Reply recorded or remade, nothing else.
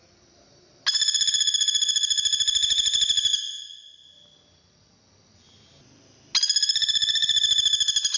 recorded